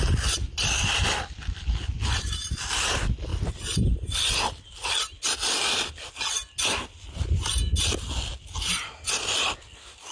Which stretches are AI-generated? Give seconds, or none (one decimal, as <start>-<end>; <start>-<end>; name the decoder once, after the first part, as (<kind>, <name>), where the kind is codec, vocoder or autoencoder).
none